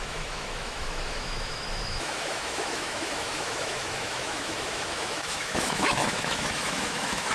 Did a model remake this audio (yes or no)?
yes